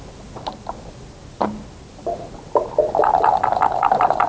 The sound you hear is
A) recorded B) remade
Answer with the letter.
A